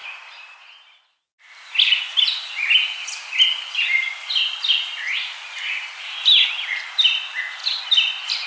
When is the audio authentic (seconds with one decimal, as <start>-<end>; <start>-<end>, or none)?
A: 0.0-8.5